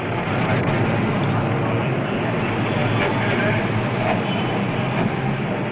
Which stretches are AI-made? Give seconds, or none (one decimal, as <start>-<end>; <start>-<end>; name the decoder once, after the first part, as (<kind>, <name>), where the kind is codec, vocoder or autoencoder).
none